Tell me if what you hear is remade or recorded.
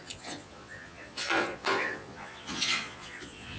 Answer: remade